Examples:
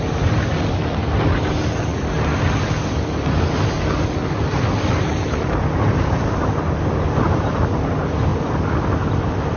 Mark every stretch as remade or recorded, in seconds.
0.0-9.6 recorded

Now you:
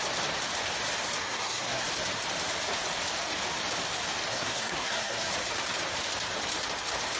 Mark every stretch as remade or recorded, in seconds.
0.0-1.2 recorded; 1.2-1.9 remade; 1.9-4.3 recorded; 4.3-5.3 remade; 5.3-7.2 recorded

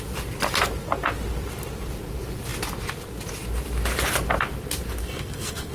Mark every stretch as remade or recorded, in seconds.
0.0-5.0 recorded; 5.0-5.7 remade

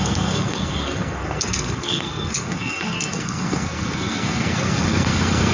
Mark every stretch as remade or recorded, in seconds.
0.0-5.5 remade

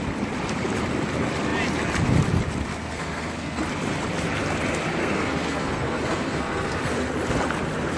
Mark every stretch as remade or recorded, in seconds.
0.0-2.7 recorded; 2.7-3.6 remade; 3.6-5.0 recorded; 5.0-7.1 remade; 7.1-8.0 recorded